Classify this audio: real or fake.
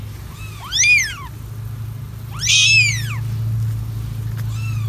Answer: real